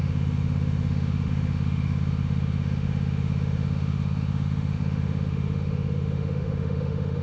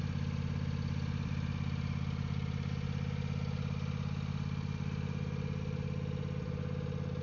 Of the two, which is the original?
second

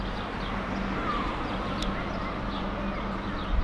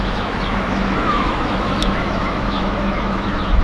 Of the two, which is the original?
first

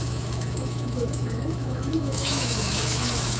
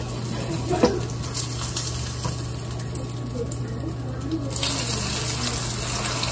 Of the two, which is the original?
second